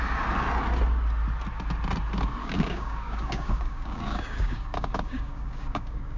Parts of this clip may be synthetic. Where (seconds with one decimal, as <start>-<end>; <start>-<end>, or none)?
2.4-6.2